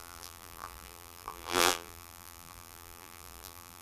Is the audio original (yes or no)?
no